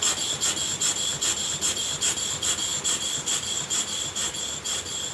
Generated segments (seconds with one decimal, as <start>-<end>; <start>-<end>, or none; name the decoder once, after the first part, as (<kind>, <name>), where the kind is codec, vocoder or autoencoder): 2.7-5.1 (vocoder, BigVGAN v2)